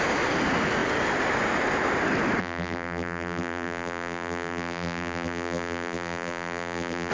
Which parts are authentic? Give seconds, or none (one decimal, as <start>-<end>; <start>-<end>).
0.0-2.4